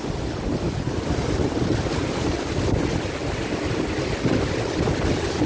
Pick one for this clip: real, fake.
real